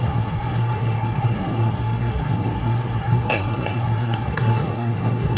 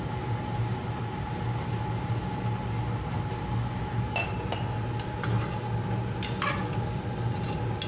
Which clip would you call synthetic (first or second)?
first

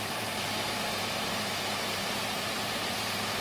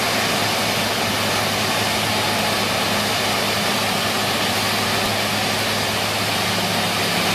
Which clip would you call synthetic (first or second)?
first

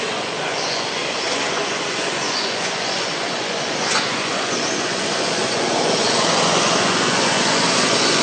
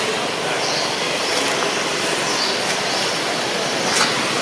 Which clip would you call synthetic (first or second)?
first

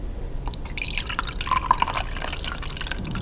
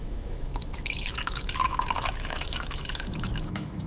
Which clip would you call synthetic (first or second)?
second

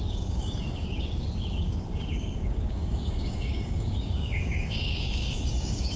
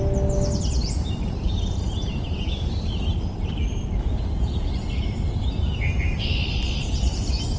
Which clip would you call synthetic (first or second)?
first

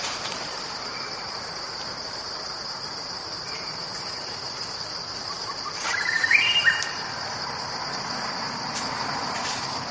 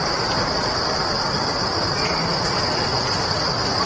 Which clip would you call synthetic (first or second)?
first